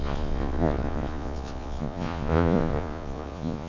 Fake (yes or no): yes